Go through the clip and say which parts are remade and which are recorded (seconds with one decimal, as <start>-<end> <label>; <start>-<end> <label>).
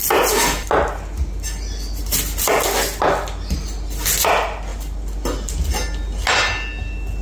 0.0-7.2 recorded